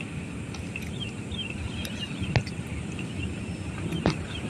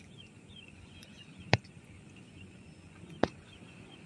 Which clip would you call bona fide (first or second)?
first